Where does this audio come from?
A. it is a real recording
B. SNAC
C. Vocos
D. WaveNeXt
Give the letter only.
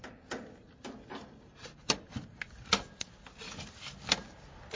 A